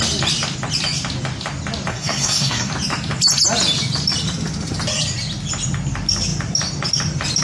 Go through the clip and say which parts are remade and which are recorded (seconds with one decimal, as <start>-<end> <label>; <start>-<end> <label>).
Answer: 0.0-1.9 recorded; 1.9-2.7 remade; 2.7-7.4 recorded